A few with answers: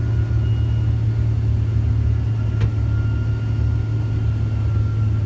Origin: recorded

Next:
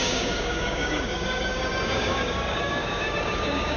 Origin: remade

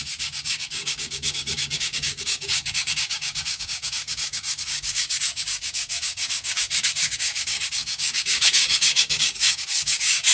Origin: remade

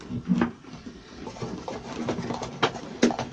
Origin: recorded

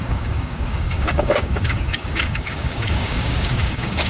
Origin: remade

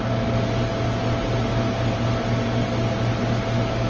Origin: recorded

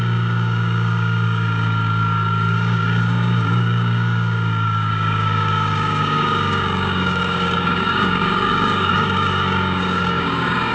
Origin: remade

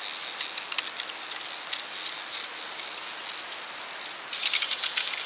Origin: recorded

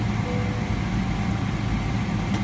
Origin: recorded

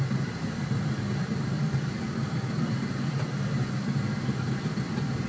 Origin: recorded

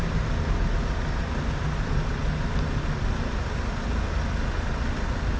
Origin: recorded